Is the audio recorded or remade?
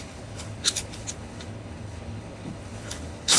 remade